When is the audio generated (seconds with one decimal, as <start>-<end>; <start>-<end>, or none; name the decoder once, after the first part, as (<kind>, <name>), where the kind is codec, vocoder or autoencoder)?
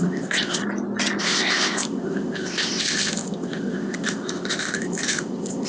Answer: 0.0-0.6 (codec, ZipCodec); 1.2-5.7